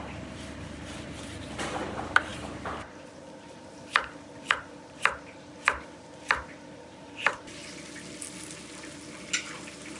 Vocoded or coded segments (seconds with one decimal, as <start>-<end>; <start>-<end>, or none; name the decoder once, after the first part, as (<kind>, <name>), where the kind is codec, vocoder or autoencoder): 0.0-7.6 (vocoder, BigVGAN v2)